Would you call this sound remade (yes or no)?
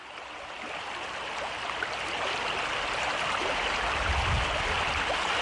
no